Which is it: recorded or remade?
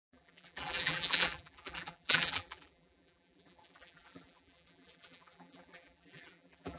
remade